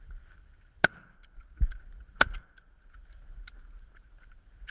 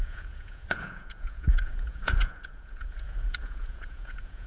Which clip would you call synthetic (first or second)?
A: second